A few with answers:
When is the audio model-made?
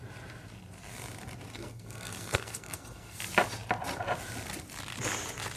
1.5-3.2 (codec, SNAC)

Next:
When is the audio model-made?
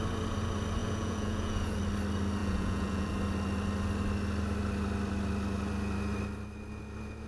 0.8-1.8 (vocoder, Vocos); 2.4-3.1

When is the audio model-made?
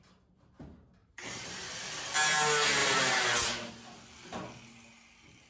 1.0-1.5 (vocoder, BigVGAN v2); 2.8-3.7